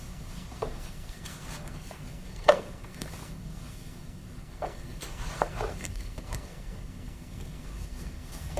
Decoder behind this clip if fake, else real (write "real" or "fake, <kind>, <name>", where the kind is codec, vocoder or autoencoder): fake, codec, SNAC